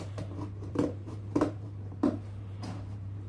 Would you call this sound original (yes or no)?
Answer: no